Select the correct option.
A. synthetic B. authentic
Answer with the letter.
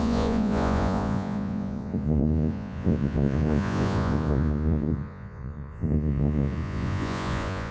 A